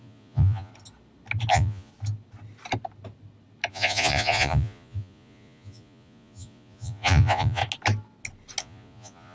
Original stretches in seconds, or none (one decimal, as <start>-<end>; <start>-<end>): 0.7-1.5; 1.9-3.7; 7.6-8.6